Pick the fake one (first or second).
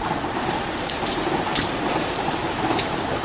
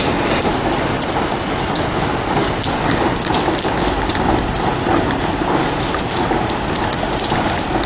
first